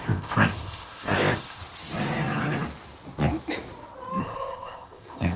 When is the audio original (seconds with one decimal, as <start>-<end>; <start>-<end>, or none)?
1.6-4.2

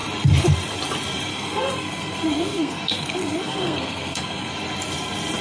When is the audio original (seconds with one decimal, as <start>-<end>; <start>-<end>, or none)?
0.0-1.3; 4.5-5.4

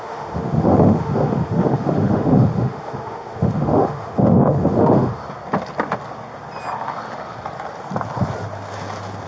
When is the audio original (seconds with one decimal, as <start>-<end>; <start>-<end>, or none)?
5.2-9.3

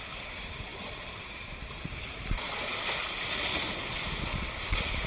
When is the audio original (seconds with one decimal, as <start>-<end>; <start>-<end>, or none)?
0.0-5.1

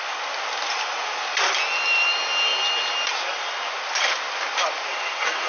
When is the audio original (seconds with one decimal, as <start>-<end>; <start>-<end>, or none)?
0.0-4.9

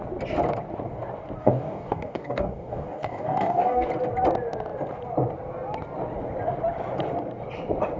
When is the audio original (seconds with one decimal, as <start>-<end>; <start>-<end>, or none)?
0.0-1.4; 3.9-8.0

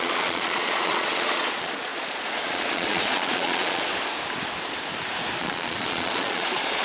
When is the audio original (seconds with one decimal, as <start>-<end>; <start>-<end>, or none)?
3.9-5.4

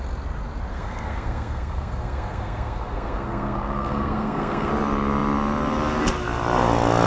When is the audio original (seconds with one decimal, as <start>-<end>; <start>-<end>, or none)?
0.0-0.7; 4.7-7.1